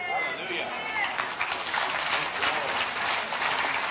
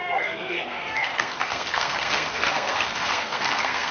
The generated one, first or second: second